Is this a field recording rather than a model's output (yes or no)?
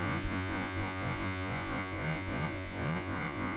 no